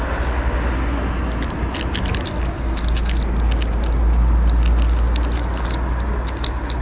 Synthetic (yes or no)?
no